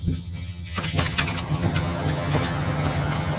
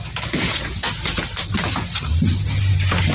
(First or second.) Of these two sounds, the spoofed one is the first